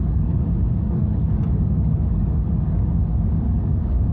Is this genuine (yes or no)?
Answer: no